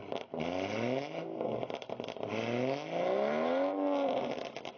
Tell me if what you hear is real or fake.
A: real